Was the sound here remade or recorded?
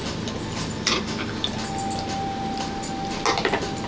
recorded